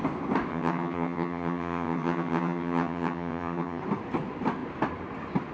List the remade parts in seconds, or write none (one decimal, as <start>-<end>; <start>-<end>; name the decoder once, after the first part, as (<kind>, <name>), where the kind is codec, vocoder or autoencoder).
0.5-3.8 (vocoder, HiFi-GAN)